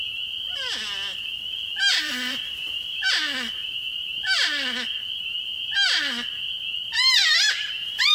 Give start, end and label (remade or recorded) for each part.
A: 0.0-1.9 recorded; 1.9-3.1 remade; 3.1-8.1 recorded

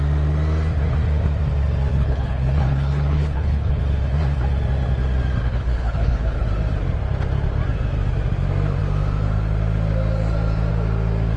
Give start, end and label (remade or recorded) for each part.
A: 0.0-1.9 recorded; 1.9-3.8 remade; 3.8-5.4 recorded; 5.4-6.5 remade; 6.5-11.4 recorded

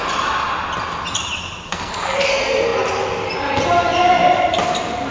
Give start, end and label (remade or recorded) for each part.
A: 0.0-1.7 recorded; 1.7-2.3 remade; 2.3-5.1 recorded

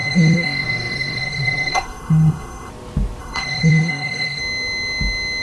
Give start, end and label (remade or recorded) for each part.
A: 0.0-2.7 remade; 2.7-3.2 recorded; 3.2-4.4 remade; 4.4-5.4 recorded

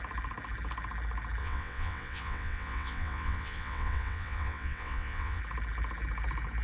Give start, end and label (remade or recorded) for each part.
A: 0.0-1.4 recorded; 1.4-5.4 remade; 5.4-6.6 recorded

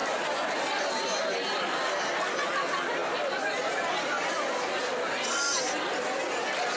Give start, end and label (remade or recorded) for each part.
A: 0.0-6.8 recorded